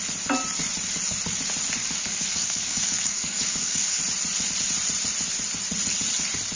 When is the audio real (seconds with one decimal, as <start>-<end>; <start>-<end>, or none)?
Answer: 0.0-1.8; 4.0-6.6